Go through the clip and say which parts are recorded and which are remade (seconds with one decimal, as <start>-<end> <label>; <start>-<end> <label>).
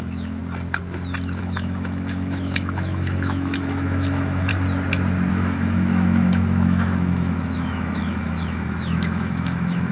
0.0-0.4 remade; 0.4-1.4 recorded; 1.4-4.5 remade; 4.5-5.3 recorded; 5.3-9.9 remade